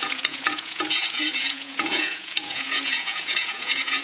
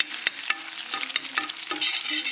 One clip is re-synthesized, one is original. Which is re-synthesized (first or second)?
first